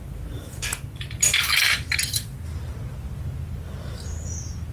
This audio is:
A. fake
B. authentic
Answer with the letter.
B